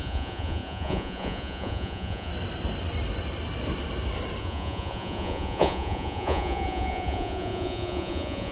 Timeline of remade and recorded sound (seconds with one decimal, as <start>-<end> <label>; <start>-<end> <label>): 0.0-2.3 remade; 2.3-4.4 recorded; 4.4-8.5 remade